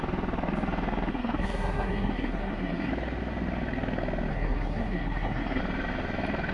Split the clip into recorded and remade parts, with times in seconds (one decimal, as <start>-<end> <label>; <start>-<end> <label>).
0.0-1.1 recorded; 1.1-2.9 remade; 2.9-4.3 recorded; 4.3-5.6 remade; 5.6-6.5 recorded